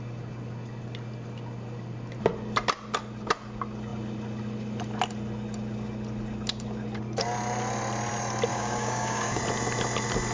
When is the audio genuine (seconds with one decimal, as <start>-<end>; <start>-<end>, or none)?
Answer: 0.0-8.5; 9.4-10.3